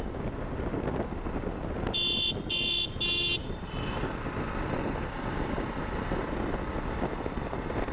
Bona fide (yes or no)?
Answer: yes